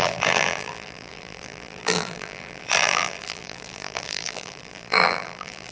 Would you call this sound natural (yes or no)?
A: no